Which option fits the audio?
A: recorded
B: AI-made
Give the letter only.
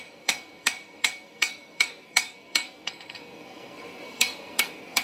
B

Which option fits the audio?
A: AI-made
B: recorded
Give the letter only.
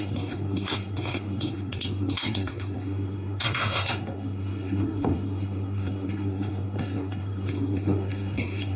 A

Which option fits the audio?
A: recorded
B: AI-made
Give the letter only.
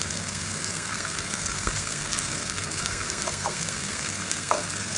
B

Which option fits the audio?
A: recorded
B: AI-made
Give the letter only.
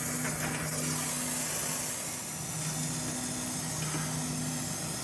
A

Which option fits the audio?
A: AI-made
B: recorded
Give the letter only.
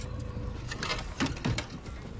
B